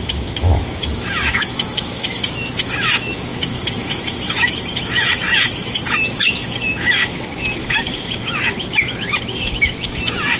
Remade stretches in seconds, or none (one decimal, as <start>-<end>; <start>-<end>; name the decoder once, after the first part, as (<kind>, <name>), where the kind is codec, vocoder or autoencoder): 0.0-10.4 (autoencoder, DAC-VAE)